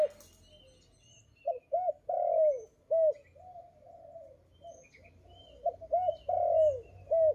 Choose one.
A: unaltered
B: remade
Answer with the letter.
A